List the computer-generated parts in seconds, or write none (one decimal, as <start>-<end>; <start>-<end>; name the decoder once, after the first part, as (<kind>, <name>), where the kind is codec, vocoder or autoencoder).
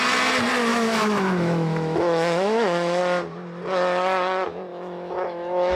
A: 0.7-3.0 (autoencoder, DAC-VAE); 4.7-5.8